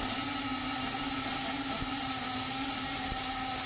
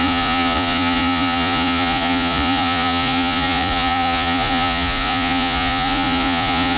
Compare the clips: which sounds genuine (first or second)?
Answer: first